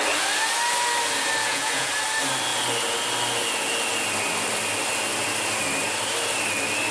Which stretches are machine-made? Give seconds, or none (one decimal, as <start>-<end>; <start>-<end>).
1.4-1.9